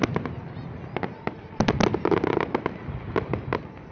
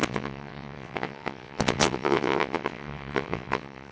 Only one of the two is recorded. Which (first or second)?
first